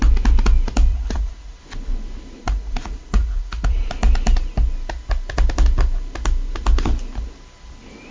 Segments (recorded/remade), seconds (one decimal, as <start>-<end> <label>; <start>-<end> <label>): 0.0-0.9 recorded; 0.9-1.6 remade; 1.6-2.4 recorded; 2.4-3.9 remade; 3.9-8.1 recorded